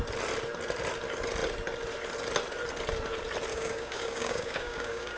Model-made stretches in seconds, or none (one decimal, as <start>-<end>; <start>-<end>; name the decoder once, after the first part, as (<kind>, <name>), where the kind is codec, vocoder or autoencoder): 3.5-5.2 (codec, DAC)

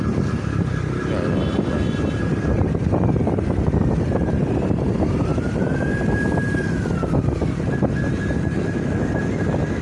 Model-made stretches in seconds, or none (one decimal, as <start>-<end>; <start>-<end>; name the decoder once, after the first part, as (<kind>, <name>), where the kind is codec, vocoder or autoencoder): none

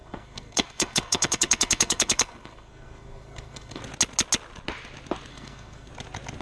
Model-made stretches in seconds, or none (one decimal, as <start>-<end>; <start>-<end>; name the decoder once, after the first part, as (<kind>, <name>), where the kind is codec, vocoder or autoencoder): 0.0-3.8 (codec, SNAC); 5.3-5.9

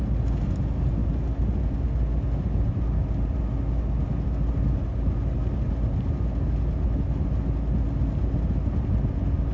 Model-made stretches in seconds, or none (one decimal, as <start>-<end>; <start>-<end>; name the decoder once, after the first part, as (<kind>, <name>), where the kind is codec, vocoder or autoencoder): none

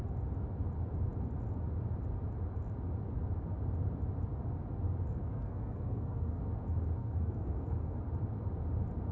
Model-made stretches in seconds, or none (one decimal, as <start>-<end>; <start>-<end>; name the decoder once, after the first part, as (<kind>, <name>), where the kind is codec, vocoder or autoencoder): 5.2-6.4 (codec, SNAC); 7.0-8.0